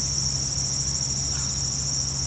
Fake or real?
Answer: real